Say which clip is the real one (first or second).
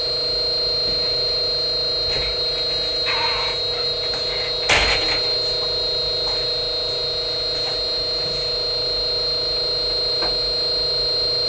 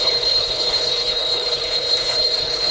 first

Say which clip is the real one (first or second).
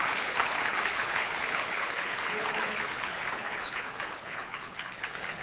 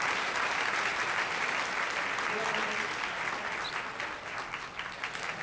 second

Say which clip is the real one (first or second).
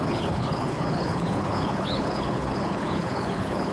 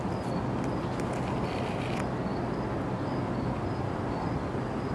second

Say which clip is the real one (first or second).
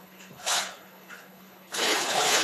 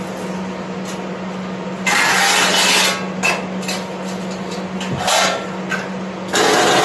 second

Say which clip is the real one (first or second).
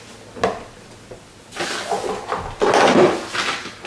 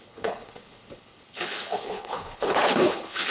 first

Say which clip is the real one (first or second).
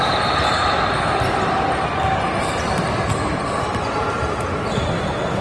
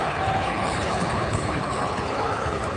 first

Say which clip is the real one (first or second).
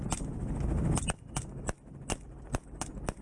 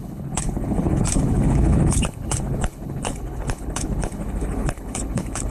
first